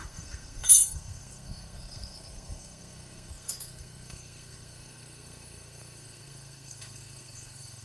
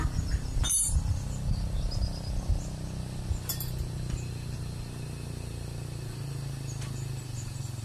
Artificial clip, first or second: first